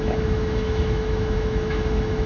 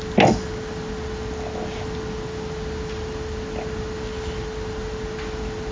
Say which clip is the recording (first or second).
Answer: second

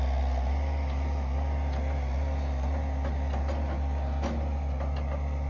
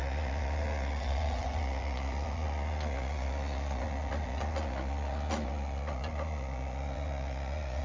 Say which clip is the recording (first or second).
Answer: first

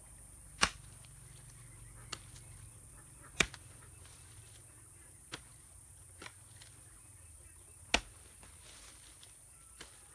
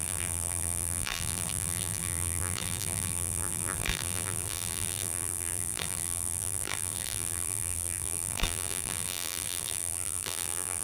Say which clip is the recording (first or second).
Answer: first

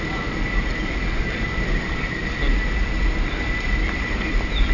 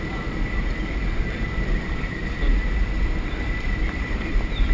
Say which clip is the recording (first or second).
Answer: first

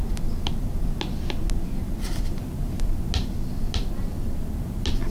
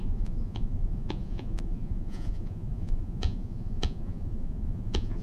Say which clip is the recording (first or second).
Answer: first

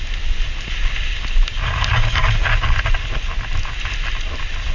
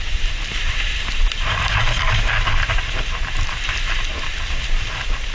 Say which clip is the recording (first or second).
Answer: first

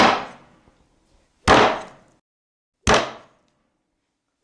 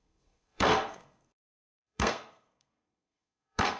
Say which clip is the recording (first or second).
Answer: first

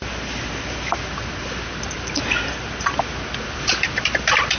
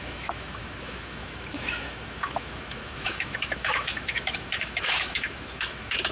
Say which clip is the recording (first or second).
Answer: first